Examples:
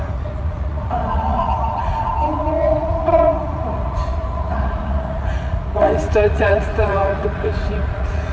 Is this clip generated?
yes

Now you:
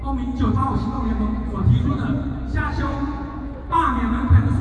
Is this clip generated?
yes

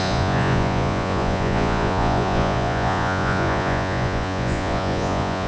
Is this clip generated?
yes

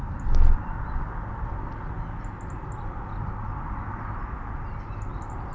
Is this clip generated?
no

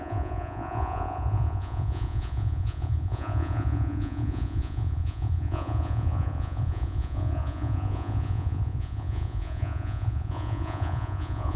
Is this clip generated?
yes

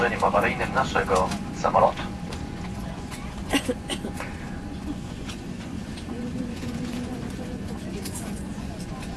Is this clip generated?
yes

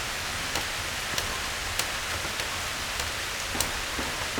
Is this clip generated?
no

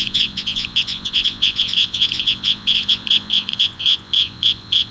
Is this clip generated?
yes